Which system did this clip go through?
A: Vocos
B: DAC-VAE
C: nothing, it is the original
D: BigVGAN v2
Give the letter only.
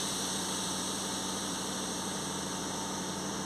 C